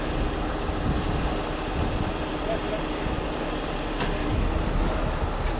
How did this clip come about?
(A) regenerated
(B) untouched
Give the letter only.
B